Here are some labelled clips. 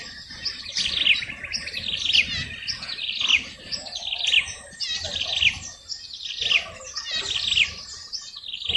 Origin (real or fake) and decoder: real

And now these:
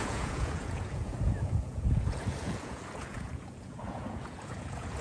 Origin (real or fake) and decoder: fake, vocoder, Vocos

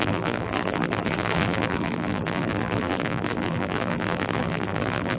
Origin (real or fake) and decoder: fake, vocoder, BigVGAN v2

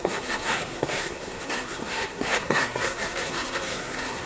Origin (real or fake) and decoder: fake, codec, SNAC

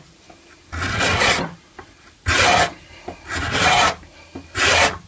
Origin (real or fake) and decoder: real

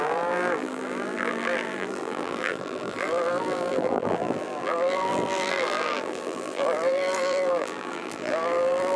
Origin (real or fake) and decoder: fake, vocoder, BigVGAN v2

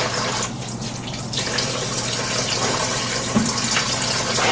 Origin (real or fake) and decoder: real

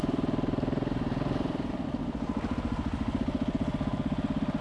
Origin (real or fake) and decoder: real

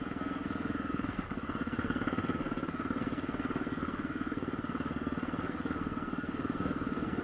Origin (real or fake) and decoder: fake, codec, SNAC